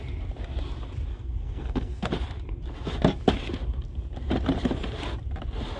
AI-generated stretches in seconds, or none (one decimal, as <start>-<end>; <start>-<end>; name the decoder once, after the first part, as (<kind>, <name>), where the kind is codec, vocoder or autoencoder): 1.1-2.1 (codec, SNAC)